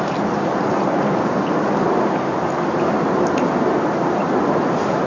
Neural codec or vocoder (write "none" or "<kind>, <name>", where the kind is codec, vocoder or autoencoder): none